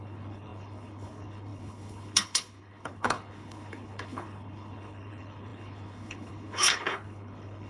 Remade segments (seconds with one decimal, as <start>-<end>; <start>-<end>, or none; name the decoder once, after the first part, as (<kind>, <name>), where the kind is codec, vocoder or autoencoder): 0.0-7.7 (codec, HILCodec)